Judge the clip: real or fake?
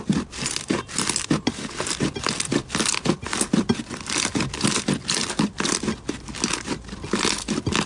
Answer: real